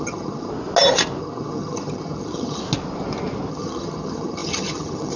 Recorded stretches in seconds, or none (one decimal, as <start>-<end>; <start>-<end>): 0.5-1.2; 2.6-3.5